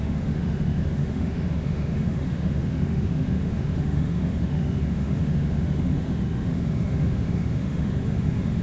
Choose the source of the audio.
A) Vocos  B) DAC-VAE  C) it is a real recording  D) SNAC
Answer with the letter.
B